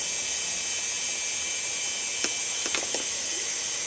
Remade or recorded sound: recorded